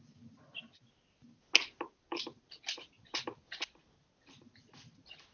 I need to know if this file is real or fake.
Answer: real